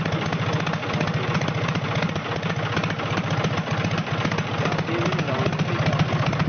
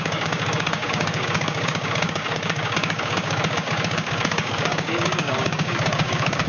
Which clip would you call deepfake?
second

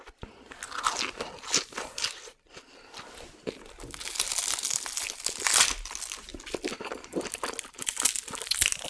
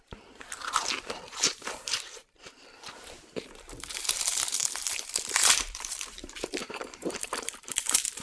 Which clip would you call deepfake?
second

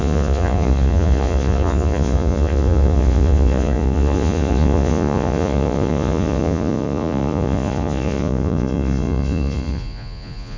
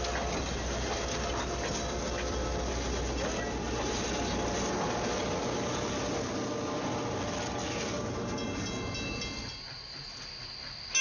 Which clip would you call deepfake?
first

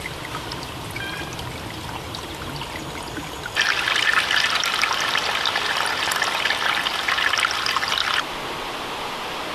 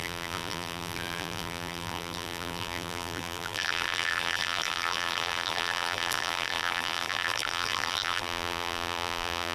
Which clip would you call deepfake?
second